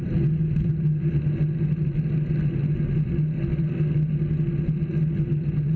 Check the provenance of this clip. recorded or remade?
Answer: recorded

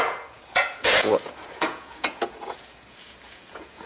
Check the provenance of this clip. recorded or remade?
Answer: remade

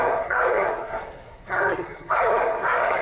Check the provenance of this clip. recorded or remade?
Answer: remade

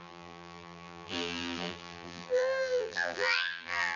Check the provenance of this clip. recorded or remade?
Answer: remade